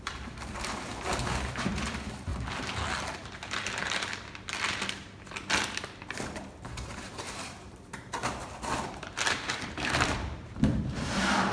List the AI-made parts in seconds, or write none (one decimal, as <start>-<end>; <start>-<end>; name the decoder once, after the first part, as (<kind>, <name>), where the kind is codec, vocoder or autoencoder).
0.0-2.3 (vocoder, BigVGAN v2); 6.1-8.4; 8.9-11.5